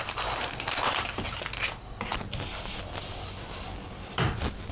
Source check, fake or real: real